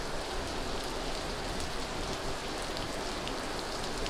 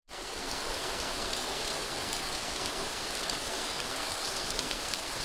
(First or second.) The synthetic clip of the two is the second